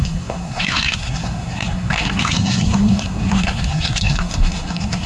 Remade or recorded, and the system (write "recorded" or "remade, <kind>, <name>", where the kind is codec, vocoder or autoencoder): remade, codec, SNAC